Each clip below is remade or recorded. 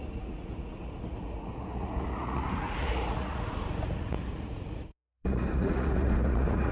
remade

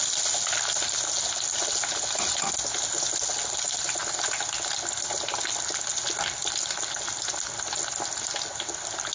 recorded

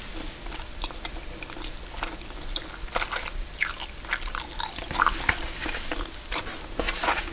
recorded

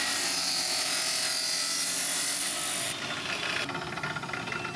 recorded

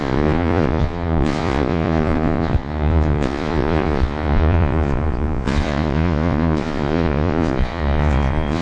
remade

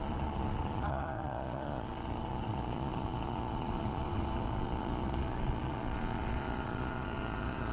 remade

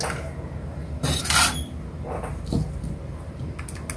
recorded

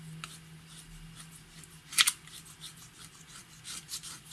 recorded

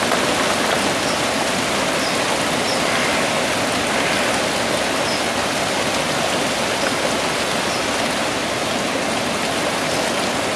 recorded